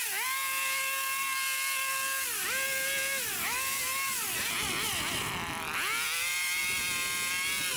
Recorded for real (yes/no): yes